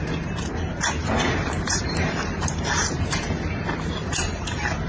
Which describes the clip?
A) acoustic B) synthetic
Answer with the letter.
B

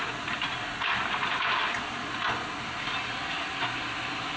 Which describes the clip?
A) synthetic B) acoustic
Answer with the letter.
B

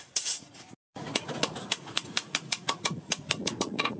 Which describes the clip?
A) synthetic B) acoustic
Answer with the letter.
A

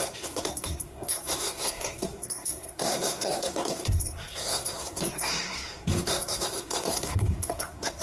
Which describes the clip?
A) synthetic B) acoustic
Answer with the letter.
A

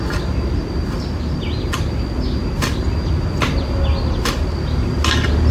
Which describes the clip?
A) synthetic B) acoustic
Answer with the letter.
B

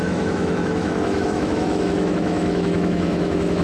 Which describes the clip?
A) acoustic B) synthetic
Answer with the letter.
B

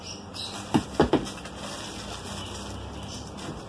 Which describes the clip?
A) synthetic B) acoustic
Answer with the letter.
B